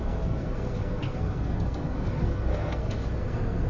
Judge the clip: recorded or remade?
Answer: remade